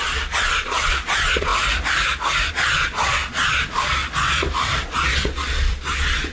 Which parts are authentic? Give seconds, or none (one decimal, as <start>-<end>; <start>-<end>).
1.5-2.5; 4.0-4.8